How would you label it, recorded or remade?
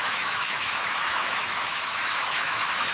remade